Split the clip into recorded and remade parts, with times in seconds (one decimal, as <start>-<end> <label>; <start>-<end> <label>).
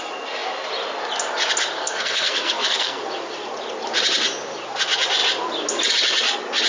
0.0-1.8 recorded; 1.8-3.0 remade; 3.0-6.7 recorded